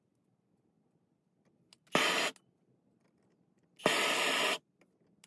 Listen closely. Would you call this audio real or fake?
real